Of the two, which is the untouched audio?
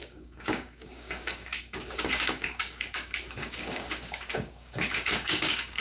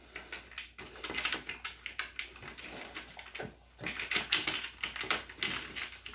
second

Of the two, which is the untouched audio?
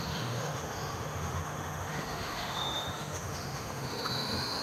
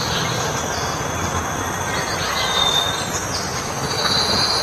second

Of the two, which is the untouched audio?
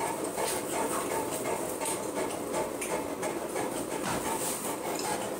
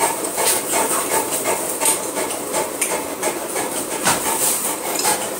first